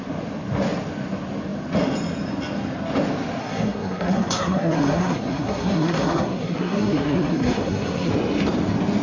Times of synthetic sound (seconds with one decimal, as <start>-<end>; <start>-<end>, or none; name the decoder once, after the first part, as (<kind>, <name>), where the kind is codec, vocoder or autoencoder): 3.4-8.1 (codec, SNAC)